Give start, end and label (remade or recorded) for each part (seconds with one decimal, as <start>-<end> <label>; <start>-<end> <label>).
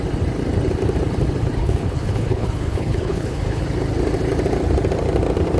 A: 0.0-1.6 recorded; 1.6-3.6 remade; 3.6-5.6 recorded